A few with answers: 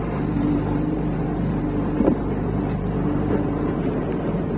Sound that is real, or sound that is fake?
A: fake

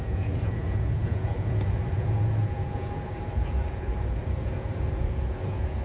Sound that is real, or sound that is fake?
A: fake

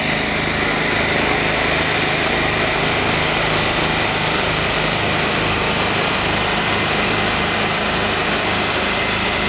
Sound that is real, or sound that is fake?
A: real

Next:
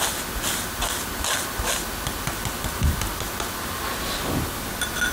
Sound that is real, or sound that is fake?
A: real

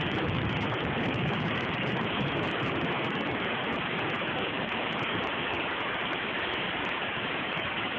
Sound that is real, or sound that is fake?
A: fake